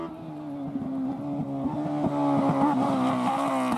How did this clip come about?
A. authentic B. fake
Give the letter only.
A